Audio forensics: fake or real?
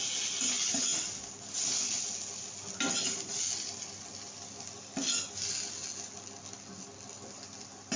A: real